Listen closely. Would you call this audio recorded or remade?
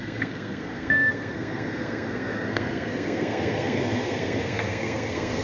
remade